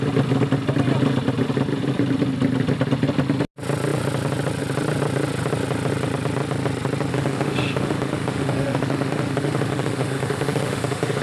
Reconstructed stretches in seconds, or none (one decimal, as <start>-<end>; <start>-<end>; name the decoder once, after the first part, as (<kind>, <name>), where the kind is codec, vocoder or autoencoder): 7.1-11.2 (autoencoder, DAC-VAE)